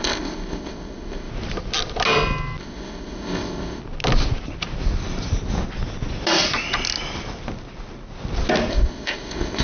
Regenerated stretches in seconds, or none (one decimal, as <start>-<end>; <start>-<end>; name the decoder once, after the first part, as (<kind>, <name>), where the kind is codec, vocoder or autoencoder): 0.0-1.3 (codec, ZipCodec); 2.6-3.8; 8.7-9.6

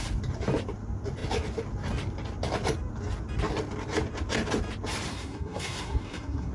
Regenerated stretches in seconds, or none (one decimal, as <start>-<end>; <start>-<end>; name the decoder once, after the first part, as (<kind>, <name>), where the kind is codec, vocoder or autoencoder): 5.1-6.5 (codec, SNAC)